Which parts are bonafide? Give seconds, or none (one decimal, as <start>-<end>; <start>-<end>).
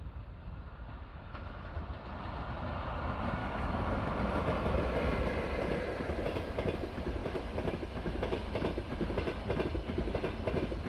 0.0-1.1; 1.7-3.4; 4.0-7.2; 8.7-10.9